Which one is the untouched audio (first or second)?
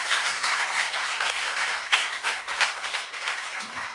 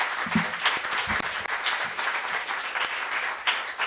second